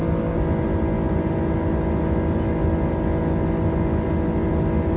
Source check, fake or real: real